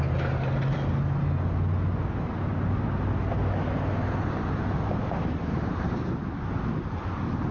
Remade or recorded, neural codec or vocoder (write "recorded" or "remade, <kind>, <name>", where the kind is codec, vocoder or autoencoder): recorded